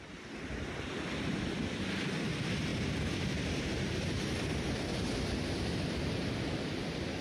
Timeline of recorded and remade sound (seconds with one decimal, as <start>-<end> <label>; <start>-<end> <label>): 0.0-7.2 remade